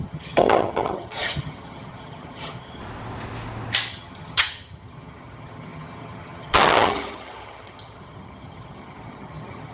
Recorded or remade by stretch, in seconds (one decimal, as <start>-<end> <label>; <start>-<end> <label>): 0.0-2.8 remade; 2.8-3.9 recorded; 3.9-9.7 remade